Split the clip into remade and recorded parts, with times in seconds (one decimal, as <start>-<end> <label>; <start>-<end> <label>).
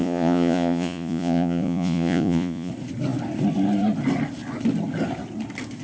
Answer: 0.0-2.7 remade; 2.7-5.8 recorded